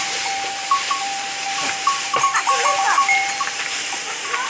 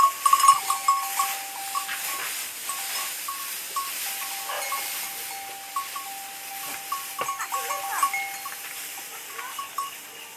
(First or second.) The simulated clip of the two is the first